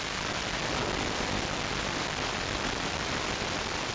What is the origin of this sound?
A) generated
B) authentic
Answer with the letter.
B